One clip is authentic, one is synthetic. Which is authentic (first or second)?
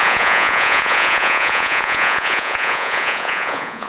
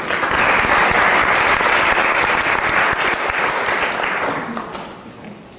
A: second